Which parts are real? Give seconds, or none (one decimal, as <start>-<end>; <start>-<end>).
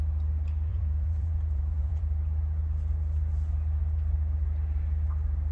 0.0-0.7; 2.0-5.5